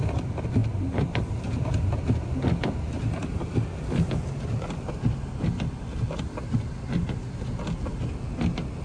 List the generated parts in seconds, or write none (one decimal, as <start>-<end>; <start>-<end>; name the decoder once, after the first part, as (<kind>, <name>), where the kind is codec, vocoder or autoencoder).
none